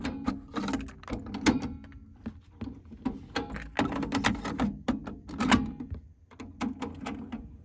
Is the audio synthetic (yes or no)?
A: no